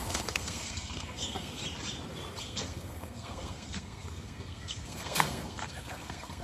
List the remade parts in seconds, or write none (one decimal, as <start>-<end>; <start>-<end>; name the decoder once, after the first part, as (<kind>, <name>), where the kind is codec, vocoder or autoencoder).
0.0-1.6 (codec, SNAC); 2.4-6.4